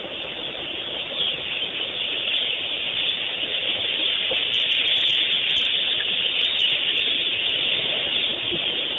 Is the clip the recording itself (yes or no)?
yes